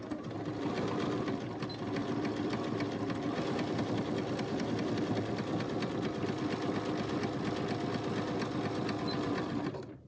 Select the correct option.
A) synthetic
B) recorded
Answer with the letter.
B